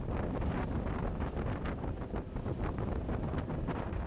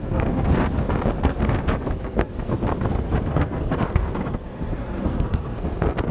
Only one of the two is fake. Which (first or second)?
second